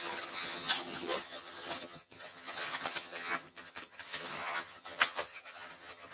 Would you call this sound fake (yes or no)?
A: yes